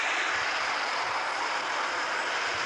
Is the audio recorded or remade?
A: recorded